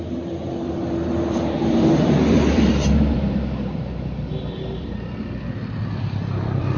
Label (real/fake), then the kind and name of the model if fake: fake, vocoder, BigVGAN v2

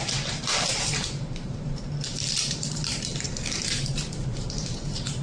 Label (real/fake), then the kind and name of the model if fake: fake, vocoder, BigVGAN v2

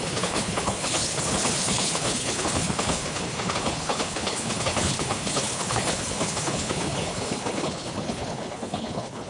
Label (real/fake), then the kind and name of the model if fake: fake, codec, HILCodec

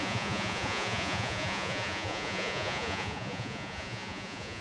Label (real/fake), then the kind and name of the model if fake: fake, vocoder, Vocos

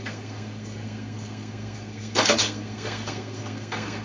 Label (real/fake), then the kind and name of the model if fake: fake, codec, SNAC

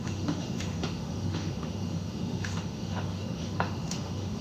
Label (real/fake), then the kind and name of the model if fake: fake, autoencoder, DAC-VAE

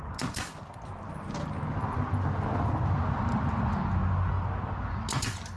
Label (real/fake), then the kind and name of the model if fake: real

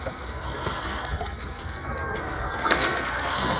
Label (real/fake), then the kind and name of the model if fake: fake, codec, SNAC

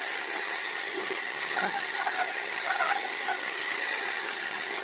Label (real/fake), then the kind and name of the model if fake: fake, vocoder, HiFi-GAN